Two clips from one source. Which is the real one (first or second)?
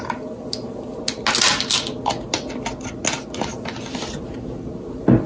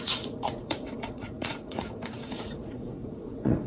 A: first